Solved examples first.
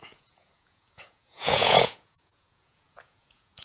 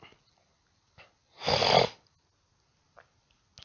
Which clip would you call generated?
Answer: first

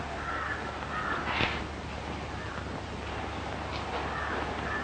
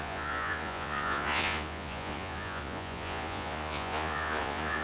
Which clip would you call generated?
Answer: second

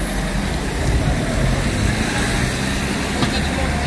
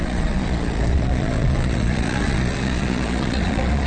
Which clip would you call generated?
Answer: second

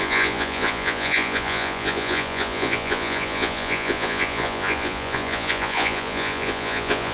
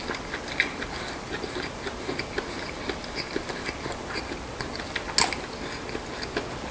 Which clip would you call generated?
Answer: first